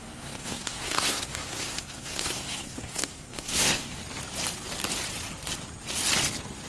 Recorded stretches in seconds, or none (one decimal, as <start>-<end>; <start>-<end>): 4.0-6.7